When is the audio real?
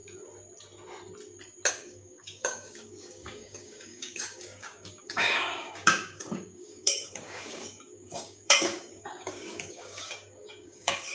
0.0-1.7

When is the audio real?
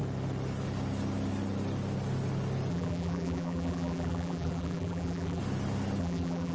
0.0-2.7; 5.4-6.0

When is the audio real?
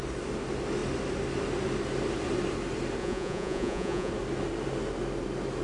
0.0-3.0; 4.1-5.6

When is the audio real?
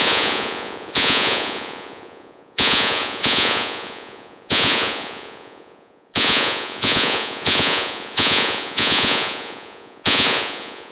none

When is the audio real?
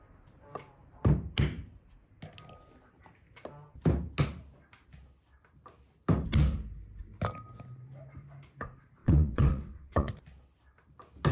0.0-9.0; 10.1-11.3